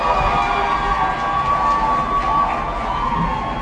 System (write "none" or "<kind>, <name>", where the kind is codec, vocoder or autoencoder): none